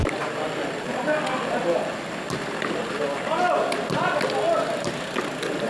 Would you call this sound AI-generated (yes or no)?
no